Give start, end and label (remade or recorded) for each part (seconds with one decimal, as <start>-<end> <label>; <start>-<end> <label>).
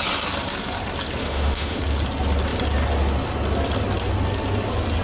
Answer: 0.0-1.2 recorded; 1.2-1.8 remade; 1.8-5.0 recorded